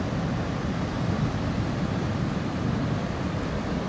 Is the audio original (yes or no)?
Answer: yes